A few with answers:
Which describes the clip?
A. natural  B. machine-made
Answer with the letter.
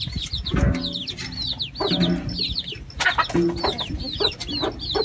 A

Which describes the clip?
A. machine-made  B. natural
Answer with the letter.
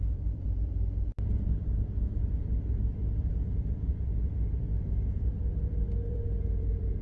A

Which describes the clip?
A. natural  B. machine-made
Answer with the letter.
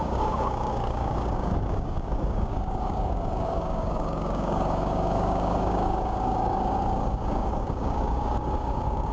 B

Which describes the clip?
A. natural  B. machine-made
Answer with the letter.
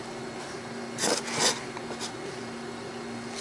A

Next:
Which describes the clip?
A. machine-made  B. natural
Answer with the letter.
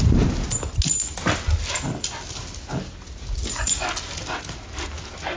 B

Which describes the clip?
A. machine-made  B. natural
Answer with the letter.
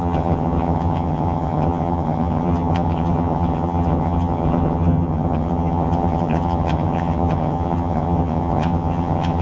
A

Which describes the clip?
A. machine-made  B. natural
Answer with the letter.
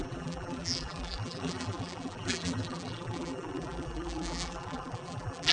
A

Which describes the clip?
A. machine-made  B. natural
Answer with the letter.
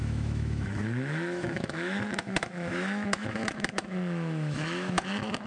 A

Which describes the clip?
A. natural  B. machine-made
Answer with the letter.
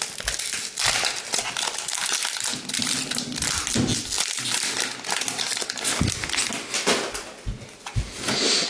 A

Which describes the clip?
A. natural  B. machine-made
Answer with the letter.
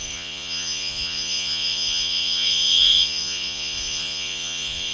B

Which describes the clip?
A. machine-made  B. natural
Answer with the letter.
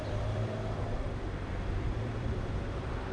A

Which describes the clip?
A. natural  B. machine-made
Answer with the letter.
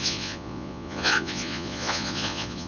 B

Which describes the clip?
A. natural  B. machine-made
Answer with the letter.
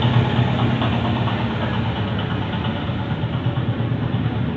A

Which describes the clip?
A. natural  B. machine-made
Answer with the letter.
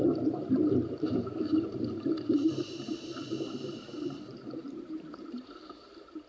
B